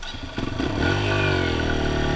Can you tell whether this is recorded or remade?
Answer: recorded